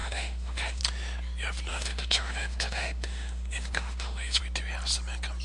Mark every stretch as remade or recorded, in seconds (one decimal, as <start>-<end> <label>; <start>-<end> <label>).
0.0-0.8 remade; 0.8-1.7 recorded; 1.7-4.4 remade; 4.4-5.4 recorded